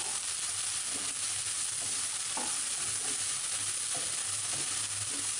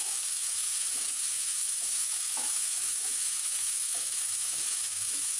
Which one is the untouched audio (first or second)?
first